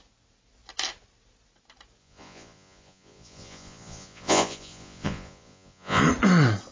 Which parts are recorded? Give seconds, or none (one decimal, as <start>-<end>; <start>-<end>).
0.0-2.0; 6.0-6.7